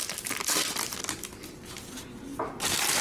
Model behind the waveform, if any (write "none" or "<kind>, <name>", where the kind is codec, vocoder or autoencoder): vocoder, BigVGAN v2